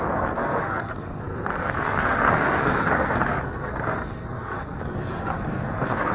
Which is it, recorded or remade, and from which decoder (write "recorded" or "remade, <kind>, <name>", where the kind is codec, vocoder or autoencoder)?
remade, codec, SNAC